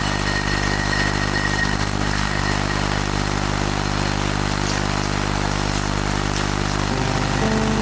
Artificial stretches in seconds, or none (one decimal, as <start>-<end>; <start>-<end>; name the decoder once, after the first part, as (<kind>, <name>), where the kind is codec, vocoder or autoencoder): 1.6-2.4 (codec, SNAC)